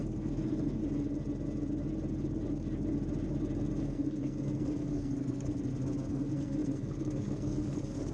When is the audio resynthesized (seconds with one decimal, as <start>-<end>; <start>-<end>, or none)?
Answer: 0.0-0.8; 3.8-5.6; 6.1-8.1